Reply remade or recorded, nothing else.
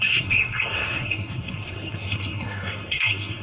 remade